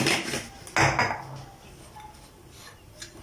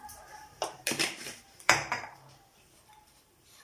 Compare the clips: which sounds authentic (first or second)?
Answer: first